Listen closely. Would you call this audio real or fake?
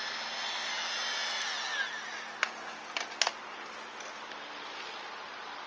real